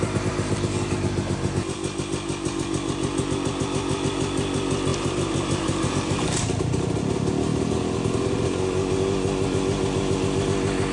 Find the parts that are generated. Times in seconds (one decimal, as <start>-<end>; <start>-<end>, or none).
4.9-6.9